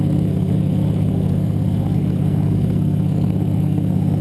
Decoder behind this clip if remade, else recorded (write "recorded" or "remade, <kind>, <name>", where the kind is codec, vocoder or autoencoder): remade, codec, SNAC